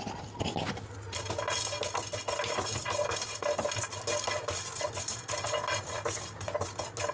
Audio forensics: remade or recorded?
recorded